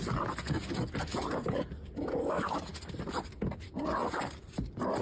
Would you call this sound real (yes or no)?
yes